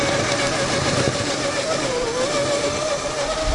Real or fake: real